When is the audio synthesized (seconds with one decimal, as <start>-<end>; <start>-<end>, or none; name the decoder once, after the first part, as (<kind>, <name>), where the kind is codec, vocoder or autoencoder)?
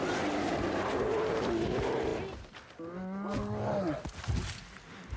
none